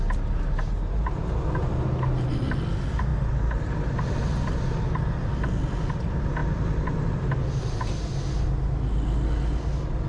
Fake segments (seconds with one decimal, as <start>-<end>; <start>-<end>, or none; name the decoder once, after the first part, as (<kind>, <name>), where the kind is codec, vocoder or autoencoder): none